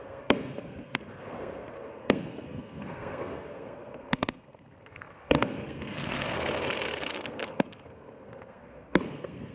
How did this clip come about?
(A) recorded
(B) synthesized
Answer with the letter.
B